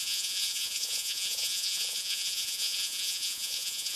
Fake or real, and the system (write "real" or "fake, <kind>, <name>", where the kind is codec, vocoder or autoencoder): fake, vocoder, Vocos